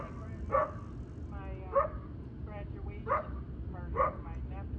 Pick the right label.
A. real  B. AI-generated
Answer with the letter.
A